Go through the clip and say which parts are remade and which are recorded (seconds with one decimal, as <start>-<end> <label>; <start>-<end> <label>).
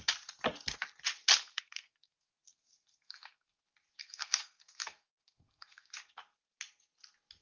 0.0-1.4 recorded; 1.4-3.6 remade; 3.6-4.0 recorded; 4.0-5.9 remade; 5.9-7.4 recorded